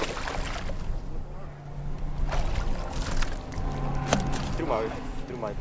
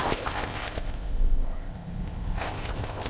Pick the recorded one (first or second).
first